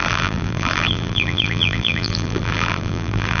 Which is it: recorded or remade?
remade